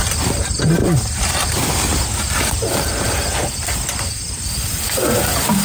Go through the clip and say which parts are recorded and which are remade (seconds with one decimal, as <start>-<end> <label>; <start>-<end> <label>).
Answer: 0.0-1.4 remade; 1.4-2.4 recorded; 2.4-5.6 remade